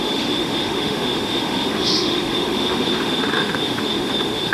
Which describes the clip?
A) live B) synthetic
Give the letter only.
B